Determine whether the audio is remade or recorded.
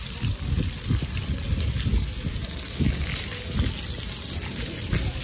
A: recorded